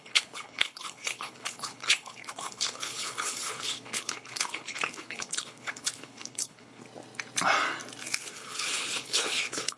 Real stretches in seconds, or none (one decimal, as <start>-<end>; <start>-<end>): 6.8-8.2

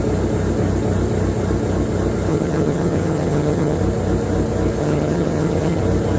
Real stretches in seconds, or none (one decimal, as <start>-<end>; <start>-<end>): 0.0-2.3; 3.8-4.8; 5.8-6.2

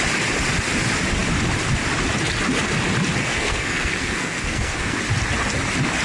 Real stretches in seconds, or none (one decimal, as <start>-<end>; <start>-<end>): 0.0-3.2; 5.0-6.0

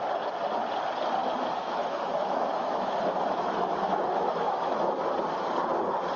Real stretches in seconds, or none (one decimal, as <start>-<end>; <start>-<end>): 0.0-1.2; 4.9-6.2

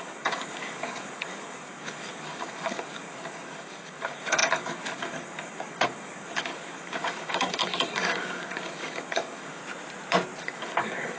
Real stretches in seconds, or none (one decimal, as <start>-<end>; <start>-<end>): 9.6-10.4

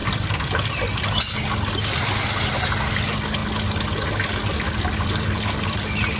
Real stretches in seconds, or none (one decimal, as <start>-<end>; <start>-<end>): 0.0-6.2

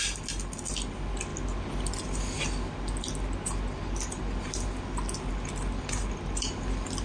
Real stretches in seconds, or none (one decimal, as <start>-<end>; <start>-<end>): 0.0-7.0

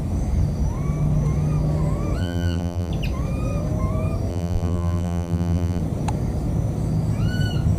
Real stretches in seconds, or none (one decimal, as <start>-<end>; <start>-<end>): 0.0-2.2; 2.9-4.3; 5.8-7.8